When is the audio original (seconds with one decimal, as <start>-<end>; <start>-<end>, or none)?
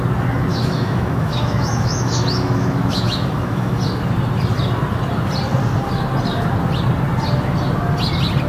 0.0-0.5; 3.8-8.5